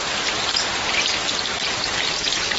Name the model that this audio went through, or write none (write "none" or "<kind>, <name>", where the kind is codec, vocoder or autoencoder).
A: none